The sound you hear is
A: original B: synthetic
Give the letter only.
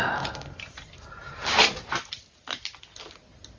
A